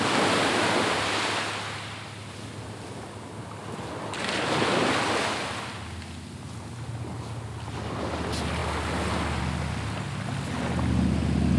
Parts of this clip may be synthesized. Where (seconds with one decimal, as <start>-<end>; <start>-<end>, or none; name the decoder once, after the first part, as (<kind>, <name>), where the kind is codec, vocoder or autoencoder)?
none